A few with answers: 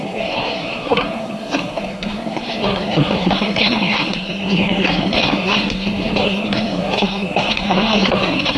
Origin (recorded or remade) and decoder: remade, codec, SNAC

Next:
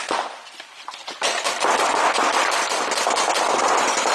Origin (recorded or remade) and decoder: recorded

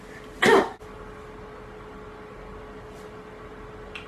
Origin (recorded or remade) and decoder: recorded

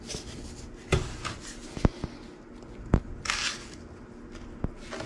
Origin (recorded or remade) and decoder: recorded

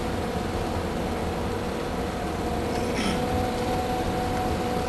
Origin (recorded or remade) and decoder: recorded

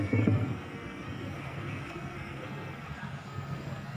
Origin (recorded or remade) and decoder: remade, codec, SNAC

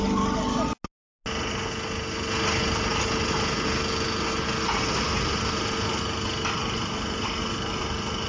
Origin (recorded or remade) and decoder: recorded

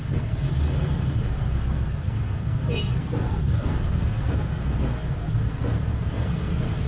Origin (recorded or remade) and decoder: remade, codec, SNAC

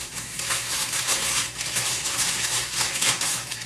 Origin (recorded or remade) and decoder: remade, codec, SNAC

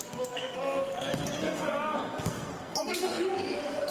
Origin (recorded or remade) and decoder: remade, codec, SNAC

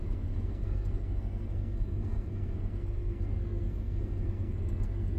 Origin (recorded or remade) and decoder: remade, codec, SNAC